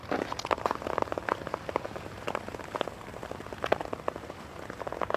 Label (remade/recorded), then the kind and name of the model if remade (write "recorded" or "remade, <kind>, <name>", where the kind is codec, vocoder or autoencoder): recorded